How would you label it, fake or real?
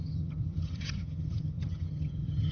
fake